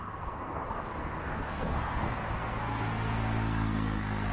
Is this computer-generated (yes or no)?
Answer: yes